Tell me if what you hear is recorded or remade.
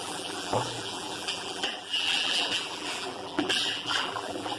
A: remade